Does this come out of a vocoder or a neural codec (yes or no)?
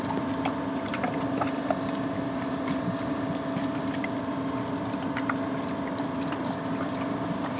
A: yes